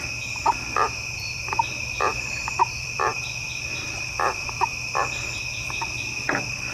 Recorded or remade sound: remade